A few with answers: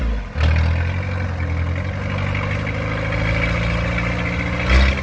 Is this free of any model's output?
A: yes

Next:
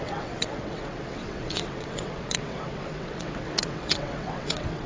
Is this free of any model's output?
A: no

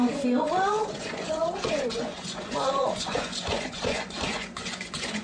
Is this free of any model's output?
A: no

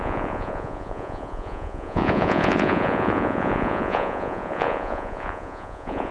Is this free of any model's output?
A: no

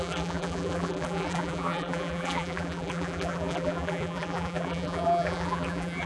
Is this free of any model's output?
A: no